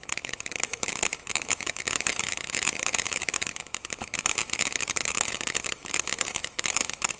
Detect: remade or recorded remade